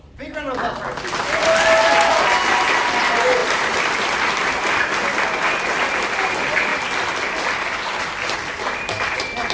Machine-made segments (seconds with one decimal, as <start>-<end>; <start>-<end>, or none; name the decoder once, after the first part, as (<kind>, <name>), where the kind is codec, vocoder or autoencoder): none